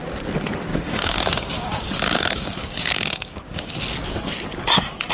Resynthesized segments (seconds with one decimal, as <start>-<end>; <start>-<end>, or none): 0.7-3.8